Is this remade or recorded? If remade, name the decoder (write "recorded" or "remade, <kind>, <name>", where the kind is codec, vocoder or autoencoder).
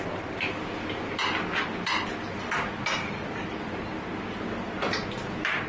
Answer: recorded